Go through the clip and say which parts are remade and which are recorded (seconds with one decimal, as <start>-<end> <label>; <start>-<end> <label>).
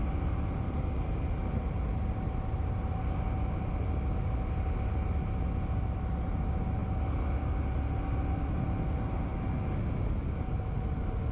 0.0-11.3 recorded